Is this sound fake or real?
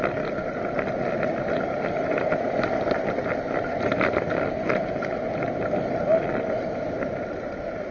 real